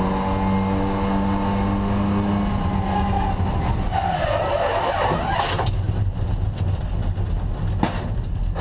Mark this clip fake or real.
real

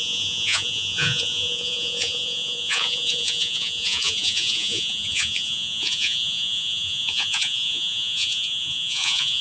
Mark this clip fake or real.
fake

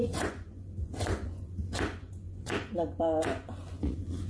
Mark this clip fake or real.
fake